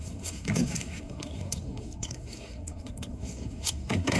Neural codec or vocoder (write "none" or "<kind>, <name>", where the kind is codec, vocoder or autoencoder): codec, SNAC